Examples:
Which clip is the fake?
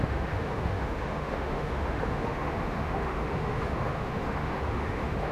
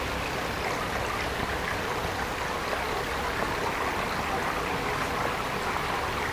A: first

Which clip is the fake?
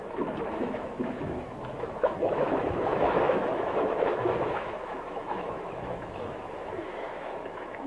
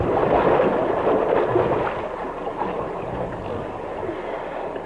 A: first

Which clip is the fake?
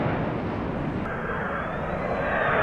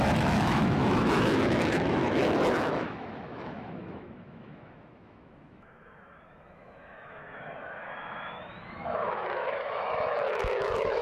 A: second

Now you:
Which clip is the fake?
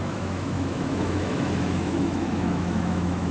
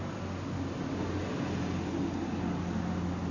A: first